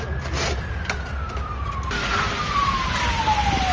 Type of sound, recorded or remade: recorded